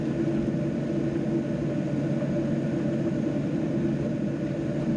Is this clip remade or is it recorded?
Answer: recorded